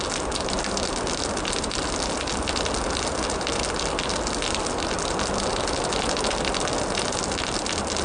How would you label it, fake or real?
real